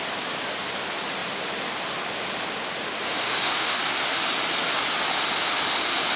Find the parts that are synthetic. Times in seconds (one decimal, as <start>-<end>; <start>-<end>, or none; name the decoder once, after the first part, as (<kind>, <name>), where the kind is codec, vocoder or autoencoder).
3.1-3.8 (autoencoder, DAC-VAE)